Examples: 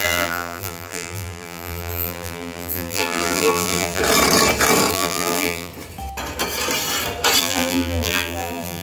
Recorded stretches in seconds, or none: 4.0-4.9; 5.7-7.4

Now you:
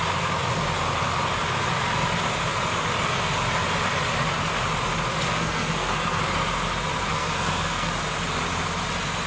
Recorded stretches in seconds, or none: 0.0-5.3; 6.2-7.0; 7.9-9.3